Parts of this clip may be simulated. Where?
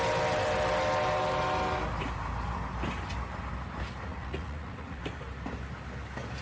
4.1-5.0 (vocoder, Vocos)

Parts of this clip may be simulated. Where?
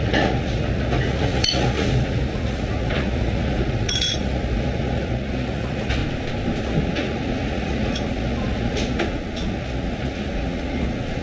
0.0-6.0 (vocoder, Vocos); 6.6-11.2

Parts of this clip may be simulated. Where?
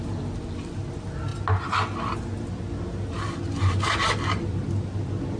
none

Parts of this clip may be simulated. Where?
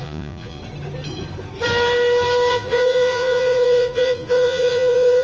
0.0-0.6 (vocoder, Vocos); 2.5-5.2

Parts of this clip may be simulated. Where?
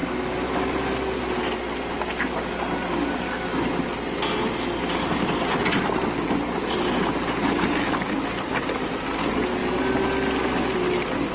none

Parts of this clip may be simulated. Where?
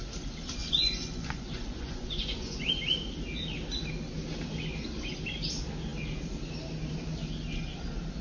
0.6-2.7 (vocoder, Vocos)